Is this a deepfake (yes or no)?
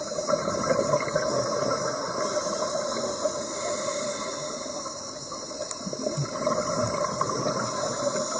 no